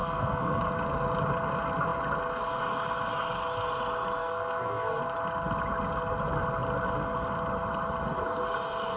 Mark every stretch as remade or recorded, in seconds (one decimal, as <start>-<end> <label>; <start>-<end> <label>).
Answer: 0.0-0.6 remade; 0.6-4.2 recorded; 4.2-5.0 remade; 5.0-9.0 recorded